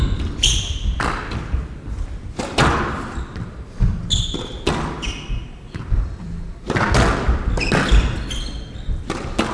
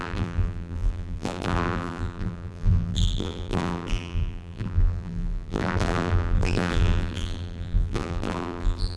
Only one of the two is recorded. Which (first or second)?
first